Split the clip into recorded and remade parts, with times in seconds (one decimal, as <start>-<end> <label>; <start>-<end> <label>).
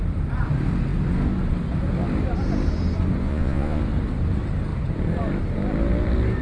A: 0.0-3.2 recorded; 3.2-3.8 remade; 3.8-6.4 recorded